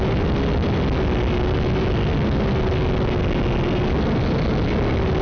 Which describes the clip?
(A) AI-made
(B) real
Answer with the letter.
B